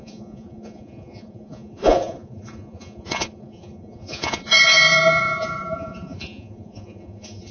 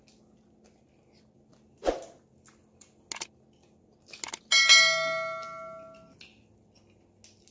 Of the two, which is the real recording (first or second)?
second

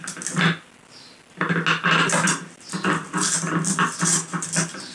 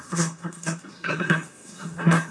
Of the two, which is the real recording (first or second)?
first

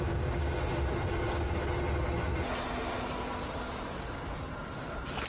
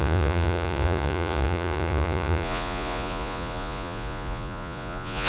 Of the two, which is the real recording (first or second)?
first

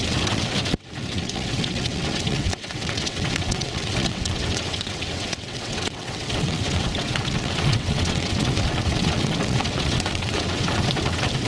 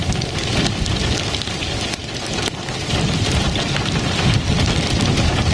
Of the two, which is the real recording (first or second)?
second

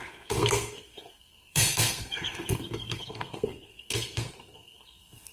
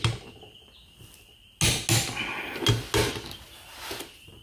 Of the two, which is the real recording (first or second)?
second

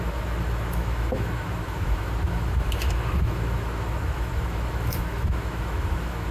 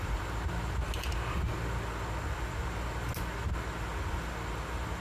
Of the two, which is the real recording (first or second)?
second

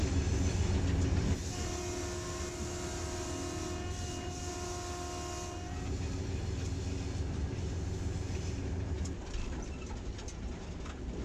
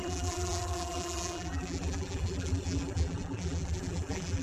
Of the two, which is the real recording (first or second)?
first